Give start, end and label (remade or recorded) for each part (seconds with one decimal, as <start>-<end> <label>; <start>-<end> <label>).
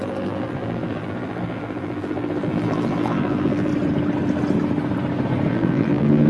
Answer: 0.0-3.7 remade; 3.7-5.5 recorded; 5.5-6.3 remade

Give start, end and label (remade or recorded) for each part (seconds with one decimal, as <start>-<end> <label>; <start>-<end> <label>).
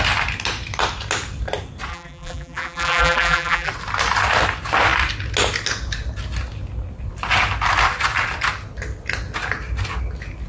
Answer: 0.0-1.9 recorded; 1.9-3.7 remade; 3.7-10.5 recorded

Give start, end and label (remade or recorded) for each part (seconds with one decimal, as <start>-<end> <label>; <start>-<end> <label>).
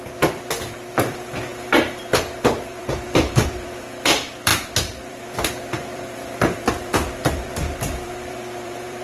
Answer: 0.0-9.0 remade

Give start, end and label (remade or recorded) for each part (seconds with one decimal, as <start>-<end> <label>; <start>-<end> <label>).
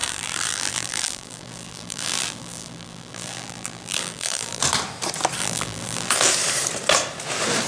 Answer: 0.0-4.6 remade; 4.6-5.4 recorded; 5.4-6.1 remade; 6.1-7.7 recorded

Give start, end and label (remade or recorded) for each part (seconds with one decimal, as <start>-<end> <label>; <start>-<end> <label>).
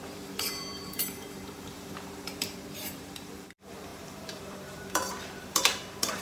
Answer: 0.0-6.2 remade